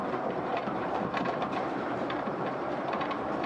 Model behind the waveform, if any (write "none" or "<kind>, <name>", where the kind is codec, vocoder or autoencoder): vocoder, BigVGAN v2